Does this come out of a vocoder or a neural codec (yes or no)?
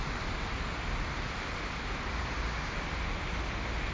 no